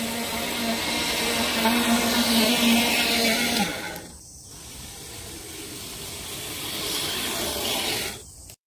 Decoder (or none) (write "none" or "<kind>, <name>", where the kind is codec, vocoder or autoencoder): none